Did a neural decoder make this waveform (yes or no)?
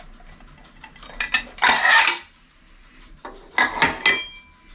no